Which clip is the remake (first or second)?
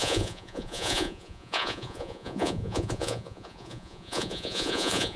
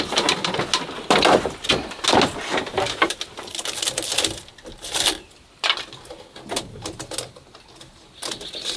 first